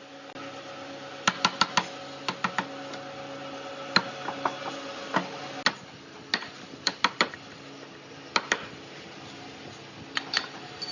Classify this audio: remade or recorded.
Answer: recorded